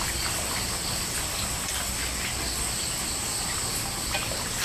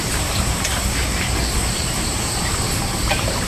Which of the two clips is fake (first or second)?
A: second